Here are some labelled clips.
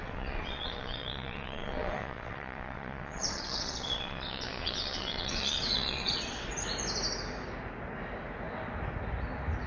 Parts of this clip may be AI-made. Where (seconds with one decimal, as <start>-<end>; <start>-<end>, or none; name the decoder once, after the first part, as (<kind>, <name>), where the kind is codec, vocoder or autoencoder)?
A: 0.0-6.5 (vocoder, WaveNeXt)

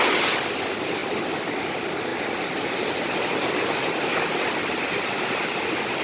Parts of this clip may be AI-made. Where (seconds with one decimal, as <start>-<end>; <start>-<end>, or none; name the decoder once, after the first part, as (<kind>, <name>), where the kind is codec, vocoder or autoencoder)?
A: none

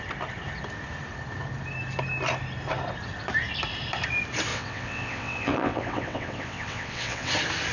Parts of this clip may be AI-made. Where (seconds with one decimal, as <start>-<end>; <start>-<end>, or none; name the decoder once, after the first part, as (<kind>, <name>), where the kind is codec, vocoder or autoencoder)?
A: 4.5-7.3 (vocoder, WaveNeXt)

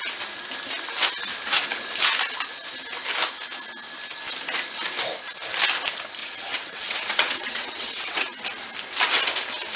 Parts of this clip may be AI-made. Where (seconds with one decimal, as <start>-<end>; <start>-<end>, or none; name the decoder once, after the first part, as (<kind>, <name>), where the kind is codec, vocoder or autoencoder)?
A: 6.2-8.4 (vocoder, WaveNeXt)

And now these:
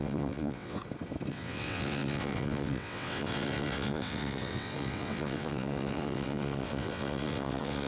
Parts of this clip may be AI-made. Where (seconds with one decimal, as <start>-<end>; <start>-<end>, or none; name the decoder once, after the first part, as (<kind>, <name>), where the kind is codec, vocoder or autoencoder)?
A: 0.0-0.8 (vocoder, WaveNeXt); 1.3-7.9